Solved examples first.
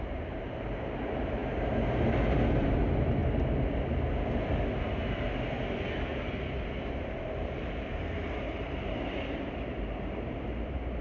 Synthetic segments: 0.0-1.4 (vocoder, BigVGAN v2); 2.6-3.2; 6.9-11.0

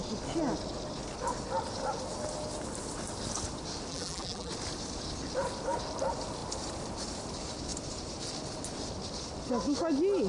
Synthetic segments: 3.9-4.5 (vocoder, BigVGAN v2)

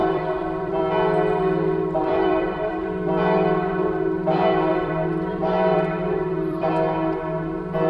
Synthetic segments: 0.0-0.8 (vocoder, BigVGAN v2); 2.0-6.7

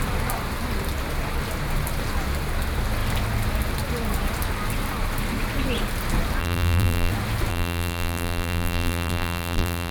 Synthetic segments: 6.4-7.1 (vocoder, BigVGAN v2); 7.5-9.9

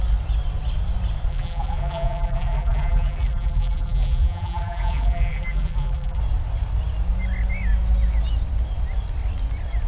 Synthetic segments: 1.3-6.2 (vocoder, BigVGAN v2)

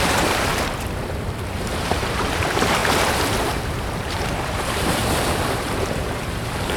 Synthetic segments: 0.0-0.5 (vocoder, BigVGAN v2); 1.5-2.8; 3.4-5.0; 5.8-6.8